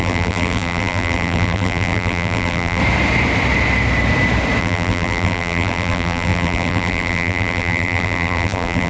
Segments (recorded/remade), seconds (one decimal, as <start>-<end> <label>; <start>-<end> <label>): 0.0-2.8 remade; 2.8-4.6 recorded; 4.6-8.9 remade